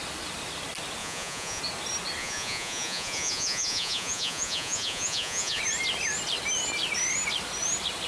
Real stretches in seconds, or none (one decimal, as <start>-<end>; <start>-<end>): 0.0-1.0; 1.6-2.2; 5.6-8.1